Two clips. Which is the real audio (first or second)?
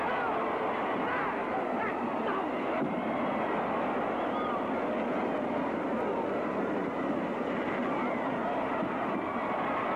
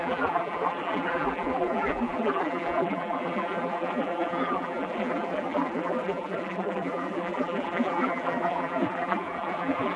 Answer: first